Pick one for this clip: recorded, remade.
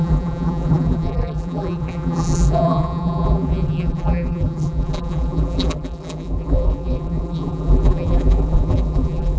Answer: remade